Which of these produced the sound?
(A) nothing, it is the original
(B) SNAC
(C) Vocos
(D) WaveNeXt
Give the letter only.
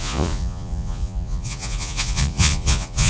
C